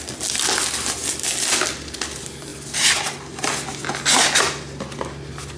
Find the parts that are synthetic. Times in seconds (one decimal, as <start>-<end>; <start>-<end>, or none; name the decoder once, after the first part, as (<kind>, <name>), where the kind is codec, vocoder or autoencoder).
none